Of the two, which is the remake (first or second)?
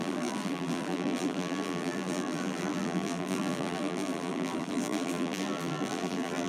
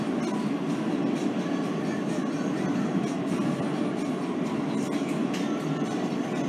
first